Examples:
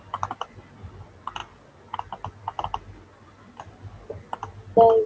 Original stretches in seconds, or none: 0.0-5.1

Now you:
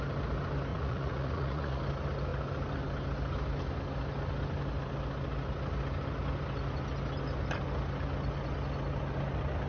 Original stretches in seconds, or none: 0.0-0.7; 1.8-9.7

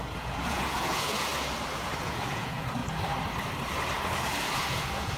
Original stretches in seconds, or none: 1.3-2.0; 2.8-4.5

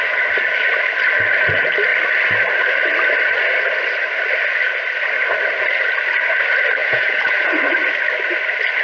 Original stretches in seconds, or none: 0.0-6.8; 7.6-8.8

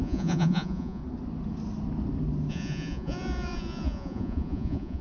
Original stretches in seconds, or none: 1.0-2.5

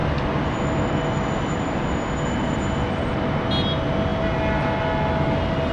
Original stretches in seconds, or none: 0.0-5.7